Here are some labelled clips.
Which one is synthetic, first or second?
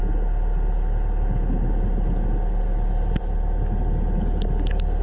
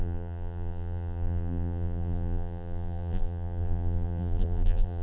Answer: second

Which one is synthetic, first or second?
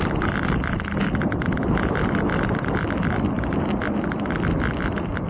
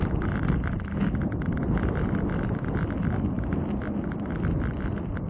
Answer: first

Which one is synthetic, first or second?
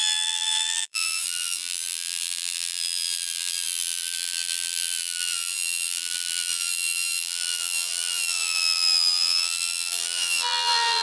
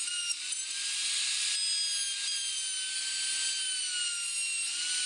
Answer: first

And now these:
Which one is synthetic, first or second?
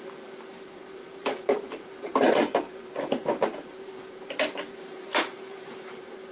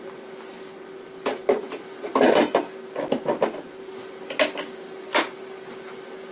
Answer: first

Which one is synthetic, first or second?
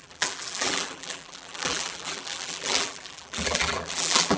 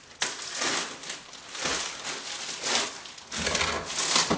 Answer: first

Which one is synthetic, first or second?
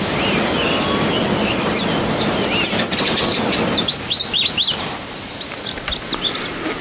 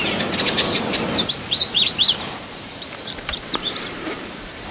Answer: second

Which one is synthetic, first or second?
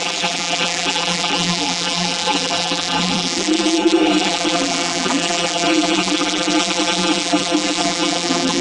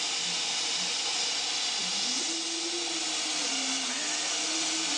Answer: first